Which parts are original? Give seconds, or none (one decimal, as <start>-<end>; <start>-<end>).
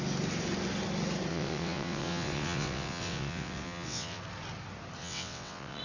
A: 0.0-1.3; 4.2-5.0